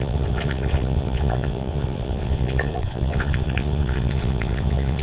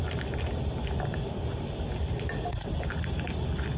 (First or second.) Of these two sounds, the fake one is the first